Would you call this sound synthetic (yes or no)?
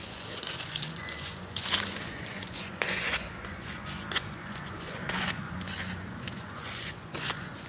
yes